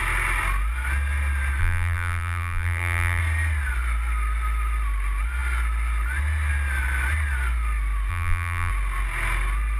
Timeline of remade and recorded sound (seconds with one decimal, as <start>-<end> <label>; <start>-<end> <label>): 0.0-1.6 recorded; 1.6-3.2 remade; 3.2-8.1 recorded; 8.1-8.7 remade; 8.7-9.8 recorded